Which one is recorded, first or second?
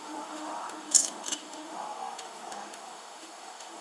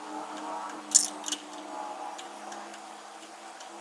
second